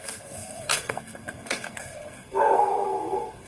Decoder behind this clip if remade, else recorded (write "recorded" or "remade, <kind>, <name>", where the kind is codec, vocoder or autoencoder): remade, codec, SNAC